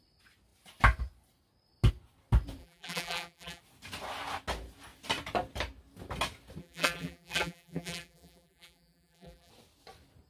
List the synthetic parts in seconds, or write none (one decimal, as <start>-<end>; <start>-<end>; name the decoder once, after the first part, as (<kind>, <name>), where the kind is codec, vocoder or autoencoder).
2.6-3.6 (vocoder, BigVGAN v2); 6.6-9.5